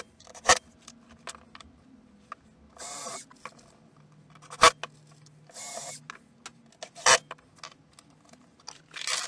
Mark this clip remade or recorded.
recorded